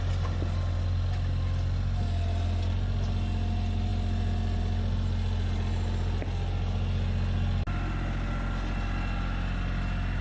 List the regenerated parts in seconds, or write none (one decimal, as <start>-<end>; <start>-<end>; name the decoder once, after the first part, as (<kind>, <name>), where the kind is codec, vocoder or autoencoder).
none